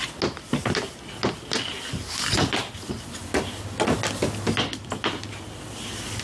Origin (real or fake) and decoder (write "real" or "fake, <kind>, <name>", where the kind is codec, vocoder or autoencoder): real